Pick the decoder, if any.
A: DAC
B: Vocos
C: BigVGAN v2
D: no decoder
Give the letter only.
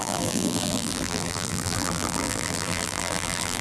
C